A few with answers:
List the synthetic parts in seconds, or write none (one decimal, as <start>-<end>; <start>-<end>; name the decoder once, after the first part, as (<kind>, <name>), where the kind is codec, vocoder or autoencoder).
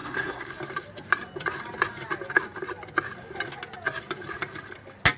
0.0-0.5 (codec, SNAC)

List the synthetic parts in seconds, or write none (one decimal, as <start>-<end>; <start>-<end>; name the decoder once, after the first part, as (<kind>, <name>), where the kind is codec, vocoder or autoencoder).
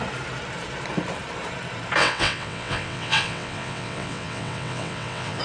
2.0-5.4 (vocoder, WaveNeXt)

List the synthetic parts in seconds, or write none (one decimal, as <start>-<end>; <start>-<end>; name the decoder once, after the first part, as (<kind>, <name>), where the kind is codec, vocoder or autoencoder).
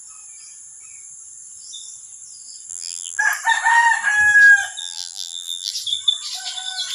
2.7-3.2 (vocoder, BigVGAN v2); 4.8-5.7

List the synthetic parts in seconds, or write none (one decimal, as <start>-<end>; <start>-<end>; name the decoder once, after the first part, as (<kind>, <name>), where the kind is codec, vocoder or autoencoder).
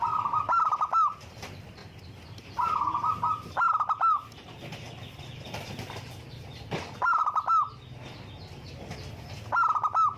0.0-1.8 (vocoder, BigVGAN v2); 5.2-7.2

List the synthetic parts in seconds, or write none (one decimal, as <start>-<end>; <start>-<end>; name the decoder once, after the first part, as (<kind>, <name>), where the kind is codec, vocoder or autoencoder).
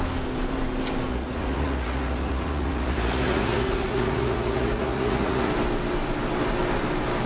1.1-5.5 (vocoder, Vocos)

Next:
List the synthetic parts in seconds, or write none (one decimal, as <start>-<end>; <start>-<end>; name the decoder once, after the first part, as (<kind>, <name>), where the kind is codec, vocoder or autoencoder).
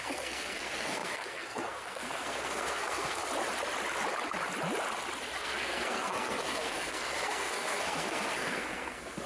0.0-3.2 (codec, SNAC); 5.4-9.3